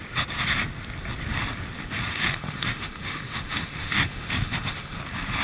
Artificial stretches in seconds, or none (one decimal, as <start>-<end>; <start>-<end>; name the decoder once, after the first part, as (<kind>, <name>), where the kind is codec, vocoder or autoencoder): 2.1-5.0 (autoencoder, DAC-VAE)